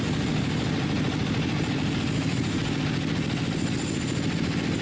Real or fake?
real